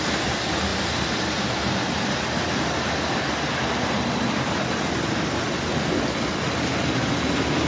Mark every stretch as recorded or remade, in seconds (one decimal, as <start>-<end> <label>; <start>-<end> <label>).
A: 0.0-7.7 recorded